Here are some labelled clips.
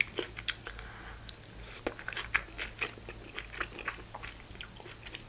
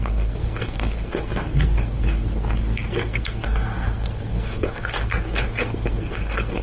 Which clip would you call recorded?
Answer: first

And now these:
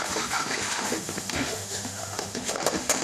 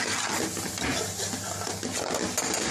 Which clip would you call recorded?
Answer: second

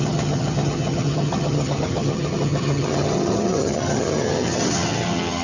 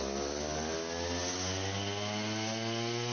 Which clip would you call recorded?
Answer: second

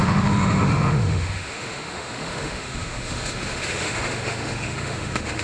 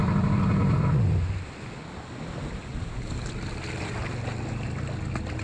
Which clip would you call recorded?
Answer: second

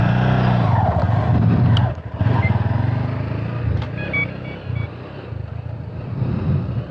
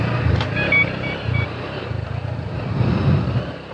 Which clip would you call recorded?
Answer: first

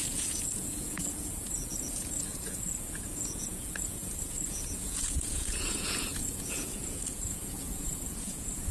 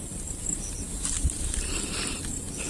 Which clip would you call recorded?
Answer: second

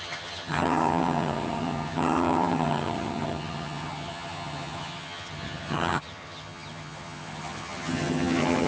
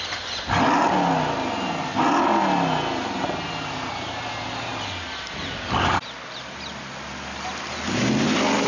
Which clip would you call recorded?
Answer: second